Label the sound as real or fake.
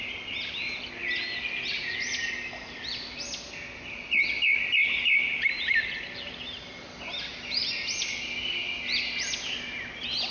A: real